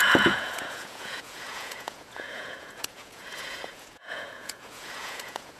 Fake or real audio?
fake